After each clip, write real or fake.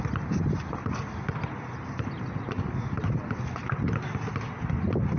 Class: real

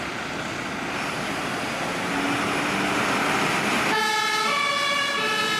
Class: real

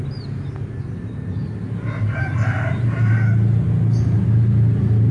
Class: real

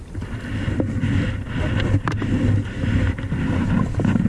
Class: real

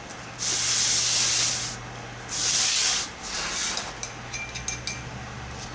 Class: real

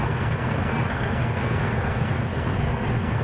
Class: fake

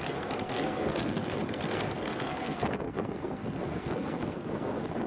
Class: fake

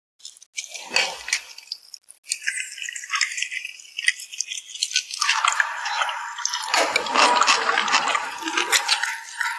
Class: real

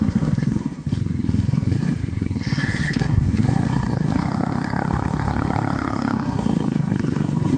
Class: fake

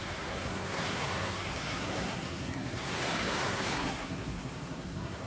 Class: fake